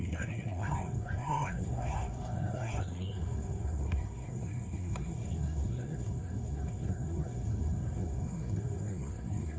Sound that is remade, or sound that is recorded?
remade